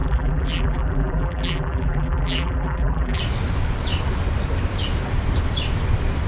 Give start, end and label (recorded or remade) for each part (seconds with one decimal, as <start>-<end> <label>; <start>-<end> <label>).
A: 0.0-3.2 remade; 3.2-6.3 recorded